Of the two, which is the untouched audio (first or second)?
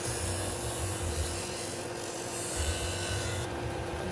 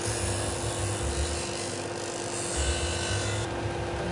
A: second